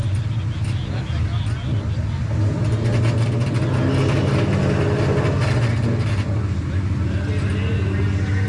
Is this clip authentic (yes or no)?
yes